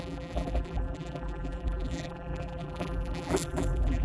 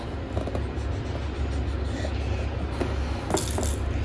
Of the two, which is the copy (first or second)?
first